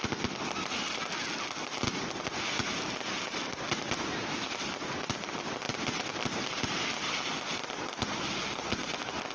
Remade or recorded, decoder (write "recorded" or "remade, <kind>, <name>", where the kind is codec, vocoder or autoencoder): recorded